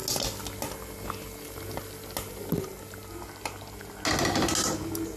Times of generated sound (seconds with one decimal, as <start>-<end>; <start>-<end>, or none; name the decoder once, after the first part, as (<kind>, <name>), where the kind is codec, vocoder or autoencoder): none